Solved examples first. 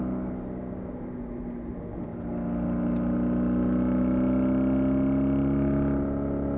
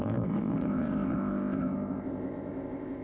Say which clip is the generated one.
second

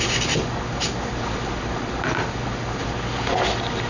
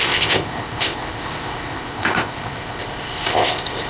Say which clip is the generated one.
second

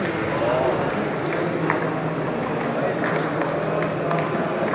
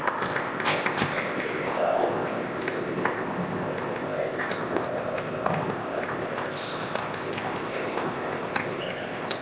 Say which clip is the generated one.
second